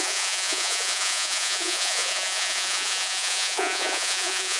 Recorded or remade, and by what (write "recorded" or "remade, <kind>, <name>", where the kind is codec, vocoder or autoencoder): remade, vocoder, Vocos